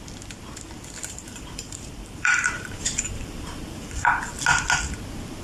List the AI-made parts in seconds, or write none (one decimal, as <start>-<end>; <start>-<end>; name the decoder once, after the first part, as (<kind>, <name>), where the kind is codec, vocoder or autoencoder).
1.0-4.2 (vocoder, BigVGAN v2)